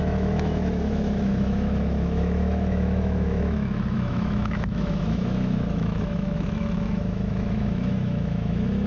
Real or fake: fake